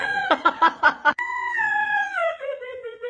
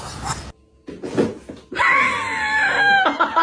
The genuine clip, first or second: second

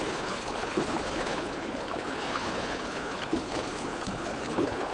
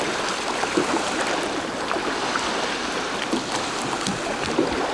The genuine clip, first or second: second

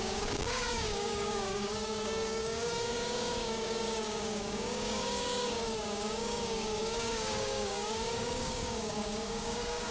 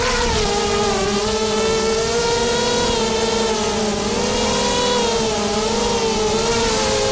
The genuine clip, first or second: second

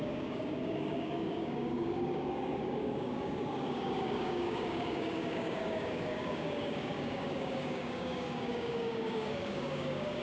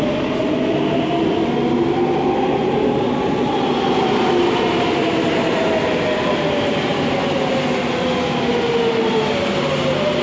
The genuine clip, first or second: second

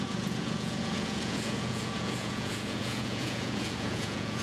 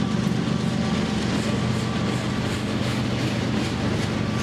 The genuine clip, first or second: second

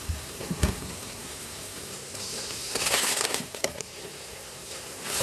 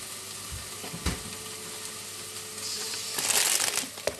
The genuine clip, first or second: second